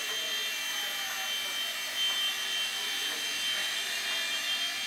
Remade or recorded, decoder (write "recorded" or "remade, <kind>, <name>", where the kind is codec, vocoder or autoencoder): recorded